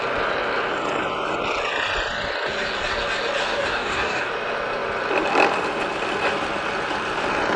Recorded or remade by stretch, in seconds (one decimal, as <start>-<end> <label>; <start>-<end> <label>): 0.0-3.4 recorded; 3.4-4.3 remade; 4.3-7.6 recorded